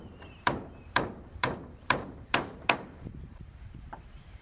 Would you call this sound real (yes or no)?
no